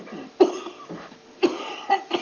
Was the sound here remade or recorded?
recorded